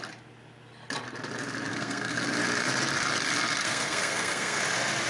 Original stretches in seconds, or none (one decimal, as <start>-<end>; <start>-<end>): 0.0-1.7; 2.3-3.6; 4.6-5.1

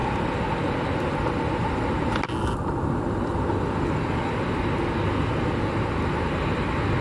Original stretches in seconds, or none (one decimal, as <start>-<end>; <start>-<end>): 0.0-7.0